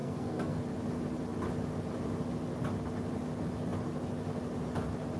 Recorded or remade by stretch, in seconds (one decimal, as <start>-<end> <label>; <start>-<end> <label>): 0.0-0.6 remade; 0.6-5.2 recorded